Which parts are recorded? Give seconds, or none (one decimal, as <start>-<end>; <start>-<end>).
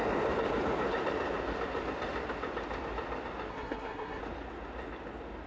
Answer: 0.0-3.5; 4.2-5.5